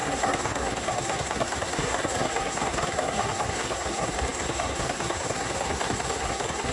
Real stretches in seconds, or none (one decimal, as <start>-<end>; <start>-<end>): none